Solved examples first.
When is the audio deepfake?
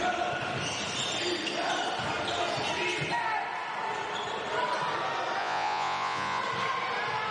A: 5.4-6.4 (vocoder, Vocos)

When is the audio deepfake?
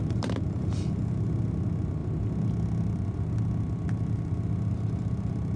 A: none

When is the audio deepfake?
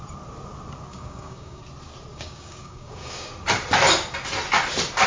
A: 0.9-1.6 (codec, DAC); 2.1-3.3